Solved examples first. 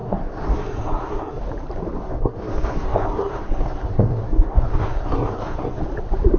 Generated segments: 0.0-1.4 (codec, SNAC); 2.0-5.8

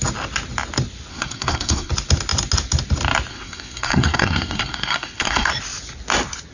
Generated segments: 1.1-1.9 (codec, SNAC); 3.3-5.5

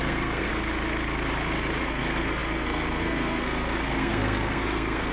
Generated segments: 0.0-0.5 (codec, SNAC); 1.8-5.1

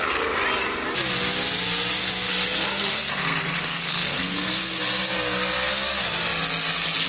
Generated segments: 2.0-4.8 (codec, SNAC)

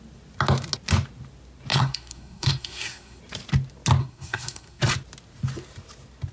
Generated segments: 1.7-3.2 (codec, SNAC); 4.0-4.8

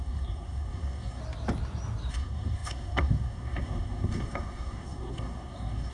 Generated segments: 0.0-1.2 (codec, SNAC); 2.1-5.9